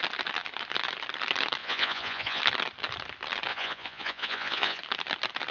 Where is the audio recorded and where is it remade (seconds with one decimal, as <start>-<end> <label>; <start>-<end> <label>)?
0.0-1.6 recorded; 1.6-2.4 remade; 2.4-3.5 recorded; 3.5-4.8 remade; 4.8-5.5 recorded